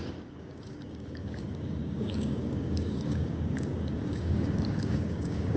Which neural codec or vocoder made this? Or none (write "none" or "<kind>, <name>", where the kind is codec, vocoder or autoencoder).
codec, DAC